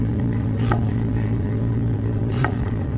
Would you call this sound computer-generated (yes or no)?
yes